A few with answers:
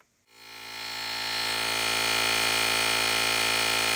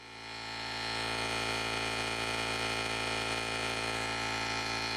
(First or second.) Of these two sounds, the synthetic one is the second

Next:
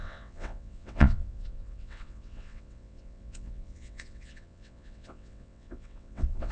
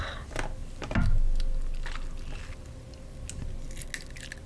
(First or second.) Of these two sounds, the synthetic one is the first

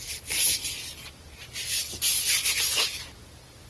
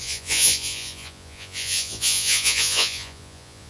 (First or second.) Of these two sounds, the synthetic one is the second